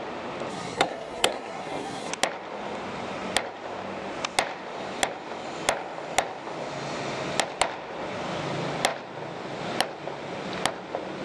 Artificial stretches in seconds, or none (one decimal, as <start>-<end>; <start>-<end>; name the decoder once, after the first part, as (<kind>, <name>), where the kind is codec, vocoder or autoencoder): 0.5-2.1 (codec, SNAC)